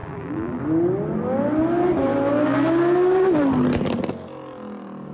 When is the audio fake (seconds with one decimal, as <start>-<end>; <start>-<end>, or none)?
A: 0.0-0.6